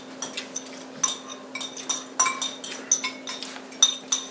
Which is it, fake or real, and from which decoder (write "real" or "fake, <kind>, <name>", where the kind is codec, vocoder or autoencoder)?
real